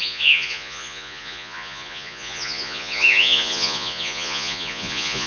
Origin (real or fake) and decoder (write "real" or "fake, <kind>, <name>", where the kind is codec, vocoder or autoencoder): fake, vocoder, Vocos